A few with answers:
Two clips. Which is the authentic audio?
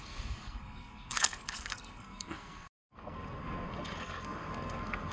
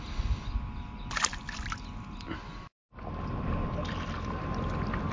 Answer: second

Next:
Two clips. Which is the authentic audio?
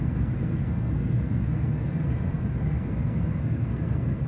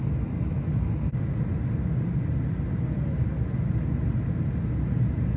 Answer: second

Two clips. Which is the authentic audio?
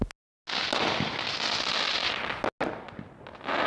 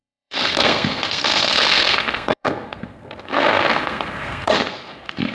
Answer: first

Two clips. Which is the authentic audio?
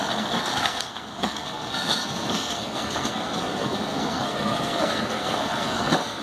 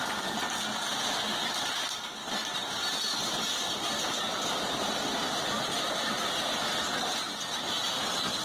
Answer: second